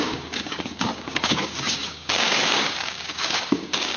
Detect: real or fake fake